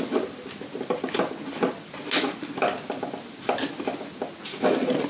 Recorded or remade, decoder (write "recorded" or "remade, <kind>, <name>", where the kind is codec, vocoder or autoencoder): recorded